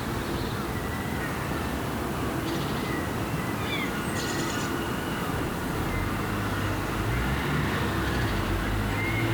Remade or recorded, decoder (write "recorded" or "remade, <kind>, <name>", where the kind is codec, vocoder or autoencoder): recorded